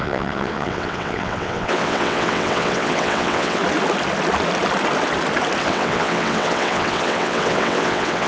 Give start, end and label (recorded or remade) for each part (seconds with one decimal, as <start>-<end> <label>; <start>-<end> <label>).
0.0-3.6 remade; 3.6-5.6 recorded; 5.6-8.3 remade